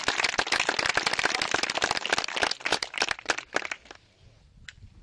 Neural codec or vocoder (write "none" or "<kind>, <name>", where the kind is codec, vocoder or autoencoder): none